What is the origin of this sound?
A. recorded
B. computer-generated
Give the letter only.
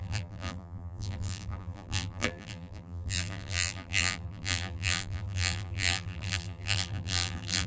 B